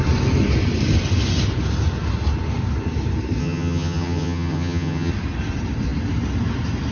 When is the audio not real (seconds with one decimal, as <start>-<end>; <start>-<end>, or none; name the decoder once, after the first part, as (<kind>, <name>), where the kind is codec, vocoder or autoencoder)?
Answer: 3.4-5.1 (vocoder, HiFi-GAN)